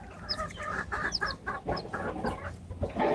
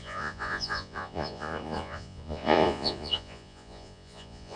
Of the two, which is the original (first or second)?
first